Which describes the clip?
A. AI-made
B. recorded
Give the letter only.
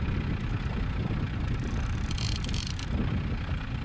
B